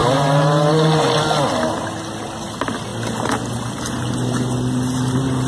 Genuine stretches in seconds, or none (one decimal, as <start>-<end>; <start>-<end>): 0.0-5.5